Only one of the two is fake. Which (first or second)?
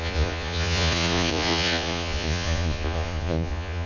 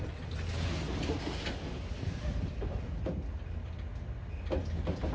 first